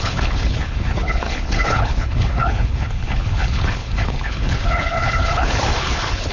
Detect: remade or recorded remade